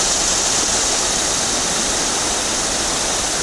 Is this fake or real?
real